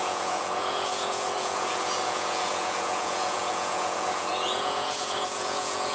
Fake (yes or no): yes